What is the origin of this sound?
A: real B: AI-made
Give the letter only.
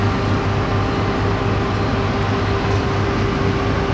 A